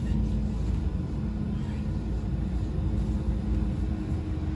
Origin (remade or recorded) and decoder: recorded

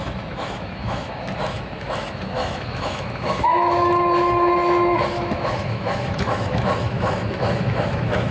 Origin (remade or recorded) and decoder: remade, autoencoder, DAC-VAE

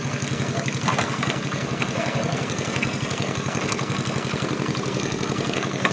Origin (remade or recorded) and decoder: remade, codec, SNAC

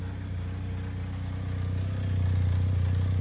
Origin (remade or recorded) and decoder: recorded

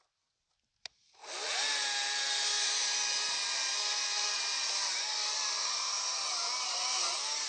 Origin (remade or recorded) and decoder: recorded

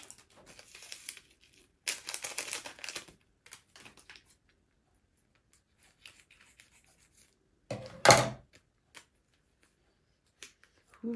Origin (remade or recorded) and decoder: recorded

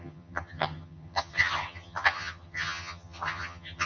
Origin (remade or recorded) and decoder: remade, vocoder, HiFi-GAN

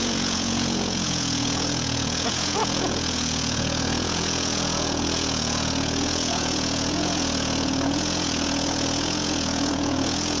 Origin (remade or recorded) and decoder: remade, vocoder, Vocos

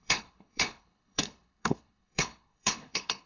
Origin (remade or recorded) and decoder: remade, codec, HILCodec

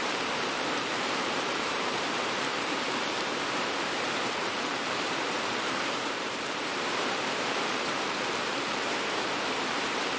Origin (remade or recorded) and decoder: remade, vocoder, BigVGAN v2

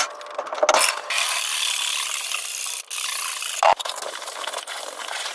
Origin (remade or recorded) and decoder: recorded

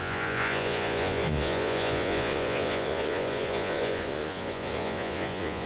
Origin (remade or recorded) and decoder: remade, vocoder, Vocos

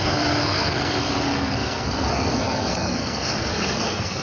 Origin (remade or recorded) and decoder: remade, codec, SNAC